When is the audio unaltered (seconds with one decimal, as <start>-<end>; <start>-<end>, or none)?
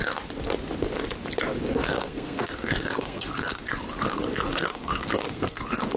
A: 0.0-1.7; 3.6-4.5; 5.6-6.0